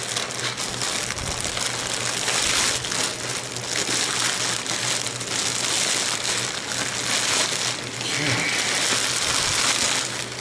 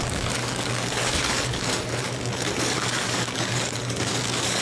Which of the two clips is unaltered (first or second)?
first